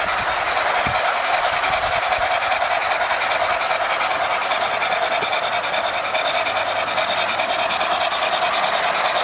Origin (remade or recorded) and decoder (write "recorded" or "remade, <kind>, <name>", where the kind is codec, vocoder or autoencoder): recorded